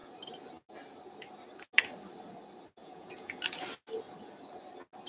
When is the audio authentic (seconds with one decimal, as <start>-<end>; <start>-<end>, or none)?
0.0-2.8; 3.4-5.1